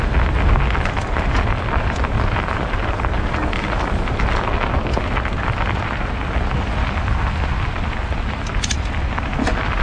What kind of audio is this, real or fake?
real